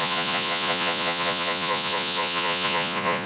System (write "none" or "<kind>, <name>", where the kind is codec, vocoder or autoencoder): vocoder, Vocos